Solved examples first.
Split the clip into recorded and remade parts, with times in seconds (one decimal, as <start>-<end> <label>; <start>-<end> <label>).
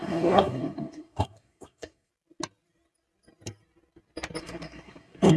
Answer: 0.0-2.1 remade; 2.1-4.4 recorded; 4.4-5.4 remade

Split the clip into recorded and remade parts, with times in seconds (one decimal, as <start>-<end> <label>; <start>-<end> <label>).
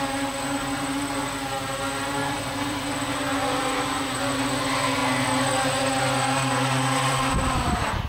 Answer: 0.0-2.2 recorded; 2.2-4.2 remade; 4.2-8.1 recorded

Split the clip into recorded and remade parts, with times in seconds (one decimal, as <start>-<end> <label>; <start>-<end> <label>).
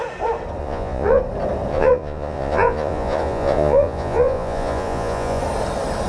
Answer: 0.0-0.6 recorded; 0.6-1.2 remade; 1.2-1.7 recorded; 1.7-5.4 remade; 5.4-6.1 recorded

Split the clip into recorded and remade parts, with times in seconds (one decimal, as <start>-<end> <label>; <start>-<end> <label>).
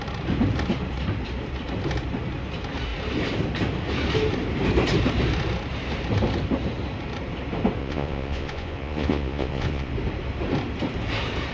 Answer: 0.0-7.8 recorded; 7.8-9.9 remade; 9.9-11.5 recorded